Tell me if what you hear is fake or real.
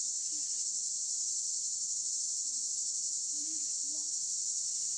real